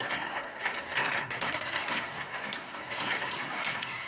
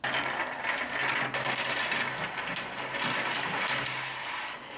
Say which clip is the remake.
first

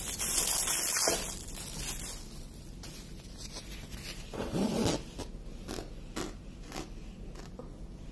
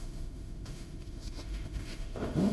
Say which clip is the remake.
second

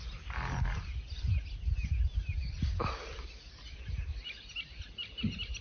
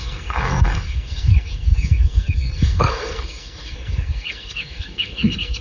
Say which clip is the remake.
second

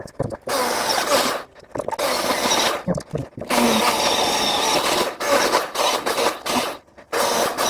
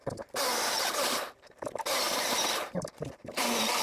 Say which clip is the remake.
second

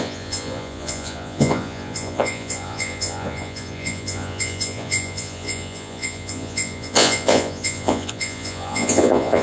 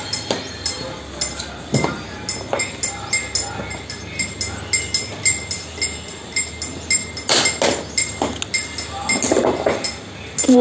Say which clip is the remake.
first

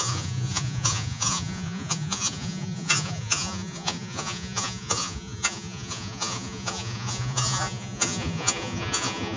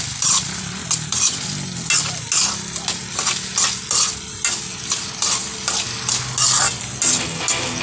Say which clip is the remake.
first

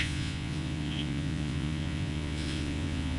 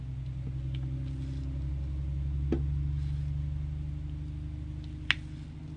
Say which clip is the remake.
first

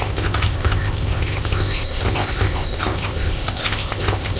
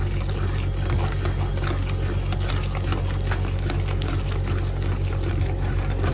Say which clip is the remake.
first